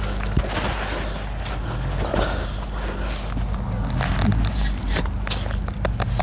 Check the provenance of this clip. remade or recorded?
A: recorded